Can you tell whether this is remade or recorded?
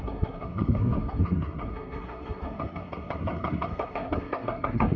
remade